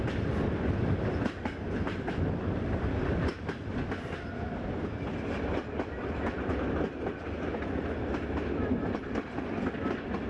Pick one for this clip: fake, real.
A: real